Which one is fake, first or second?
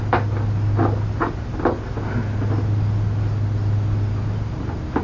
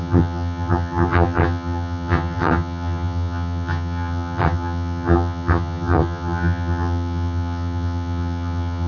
second